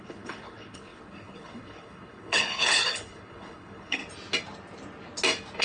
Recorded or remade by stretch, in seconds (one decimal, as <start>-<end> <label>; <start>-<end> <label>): 0.0-4.0 remade; 4.0-5.6 recorded